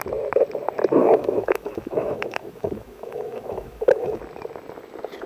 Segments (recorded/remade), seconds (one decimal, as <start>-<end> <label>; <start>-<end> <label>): 0.0-1.0 recorded; 1.0-4.2 remade; 4.2-5.3 recorded

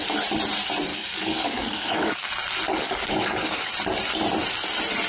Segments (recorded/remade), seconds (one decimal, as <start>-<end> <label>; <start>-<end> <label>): 0.0-0.9 recorded; 0.9-2.3 remade; 2.3-2.7 recorded; 2.7-3.7 remade; 3.7-5.1 recorded